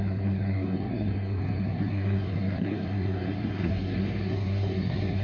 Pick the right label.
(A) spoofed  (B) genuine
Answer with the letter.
A